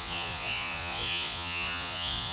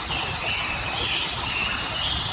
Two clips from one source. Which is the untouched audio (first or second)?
second